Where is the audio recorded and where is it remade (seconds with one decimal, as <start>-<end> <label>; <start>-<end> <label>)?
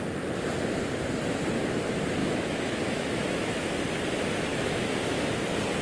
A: 0.0-2.2 recorded; 2.2-3.8 remade; 3.8-4.5 recorded; 4.5-5.3 remade; 5.3-5.8 recorded